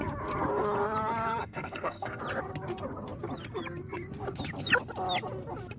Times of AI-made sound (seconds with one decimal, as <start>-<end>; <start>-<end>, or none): 1.4-2.2